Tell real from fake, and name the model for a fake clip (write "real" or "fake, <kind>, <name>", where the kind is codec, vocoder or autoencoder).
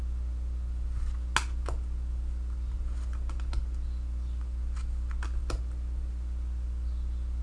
real